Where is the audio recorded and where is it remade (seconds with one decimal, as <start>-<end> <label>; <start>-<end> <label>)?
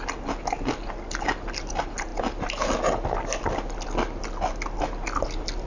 0.0-5.7 recorded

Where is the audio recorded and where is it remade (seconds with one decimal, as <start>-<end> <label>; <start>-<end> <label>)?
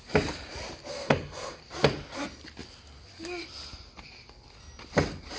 0.0-0.9 recorded; 0.9-1.6 remade; 1.6-5.4 recorded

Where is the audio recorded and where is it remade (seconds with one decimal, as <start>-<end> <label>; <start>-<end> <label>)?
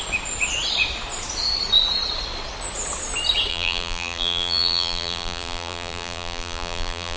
0.0-3.5 recorded; 3.5-7.2 remade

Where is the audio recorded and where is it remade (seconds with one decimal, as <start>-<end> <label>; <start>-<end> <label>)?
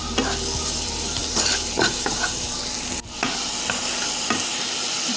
0.0-1.2 recorded; 1.2-2.6 remade; 2.6-5.2 recorded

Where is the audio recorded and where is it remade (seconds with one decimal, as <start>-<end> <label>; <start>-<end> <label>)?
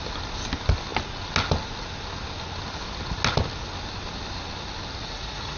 0.0-5.0 recorded; 5.0-5.6 remade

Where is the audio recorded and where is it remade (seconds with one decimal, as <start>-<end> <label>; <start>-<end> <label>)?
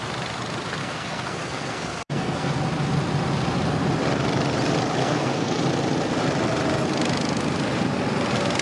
0.0-0.8 recorded; 0.8-2.6 remade; 2.6-5.0 recorded; 5.0-5.6 remade; 5.6-8.6 recorded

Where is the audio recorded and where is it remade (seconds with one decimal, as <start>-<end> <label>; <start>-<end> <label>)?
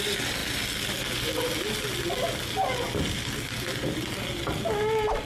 0.0-5.3 recorded